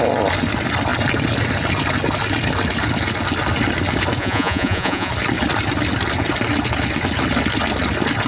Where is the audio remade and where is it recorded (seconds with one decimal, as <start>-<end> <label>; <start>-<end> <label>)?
0.0-4.2 recorded; 4.2-5.1 remade; 5.1-8.3 recorded